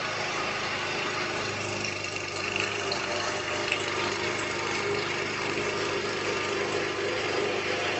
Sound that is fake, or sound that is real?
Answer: fake